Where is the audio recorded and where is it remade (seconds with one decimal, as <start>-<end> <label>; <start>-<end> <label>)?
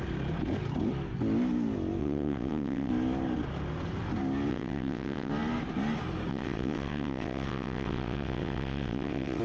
0.0-2.0 recorded; 2.0-2.9 remade; 2.9-4.5 recorded; 4.5-5.3 remade; 5.3-6.3 recorded; 6.3-9.4 remade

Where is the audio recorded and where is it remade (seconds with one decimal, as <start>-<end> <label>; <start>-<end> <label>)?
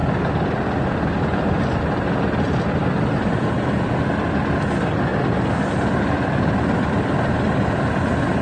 0.0-8.4 recorded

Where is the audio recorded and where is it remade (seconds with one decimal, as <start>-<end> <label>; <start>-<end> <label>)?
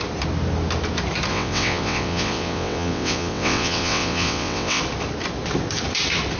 0.0-1.3 recorded; 1.3-4.8 remade; 4.8-6.4 recorded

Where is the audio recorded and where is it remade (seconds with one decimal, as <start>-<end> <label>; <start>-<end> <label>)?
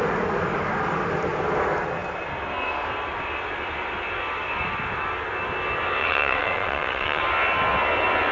0.0-6.0 recorded; 6.0-7.2 remade; 7.2-8.3 recorded